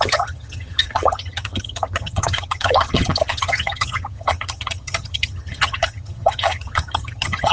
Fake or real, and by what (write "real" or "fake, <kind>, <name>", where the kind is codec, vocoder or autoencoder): fake, vocoder, HiFi-GAN